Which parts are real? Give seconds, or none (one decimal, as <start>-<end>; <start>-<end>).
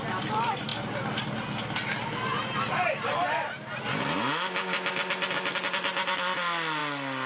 0.0-7.3